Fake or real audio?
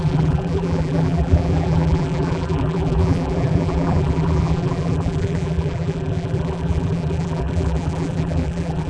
fake